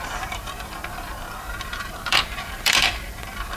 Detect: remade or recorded remade